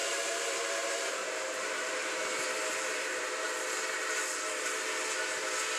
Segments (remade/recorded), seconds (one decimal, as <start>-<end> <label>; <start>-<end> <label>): 0.0-3.5 remade; 3.5-5.8 recorded